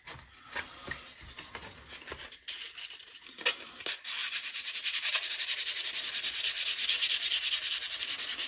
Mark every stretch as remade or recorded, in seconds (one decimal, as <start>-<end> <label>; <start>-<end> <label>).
0.0-4.2 recorded; 4.2-5.3 remade; 5.3-8.5 recorded